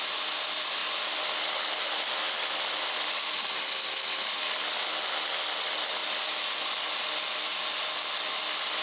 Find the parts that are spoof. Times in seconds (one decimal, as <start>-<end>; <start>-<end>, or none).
none